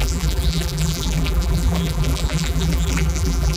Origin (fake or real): fake